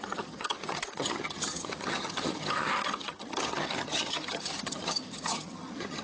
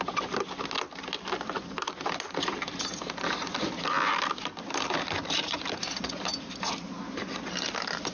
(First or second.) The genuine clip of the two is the second